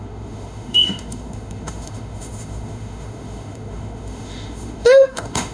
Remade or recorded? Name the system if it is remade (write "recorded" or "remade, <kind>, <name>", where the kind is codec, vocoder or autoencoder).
remade, autoencoder, DAC-VAE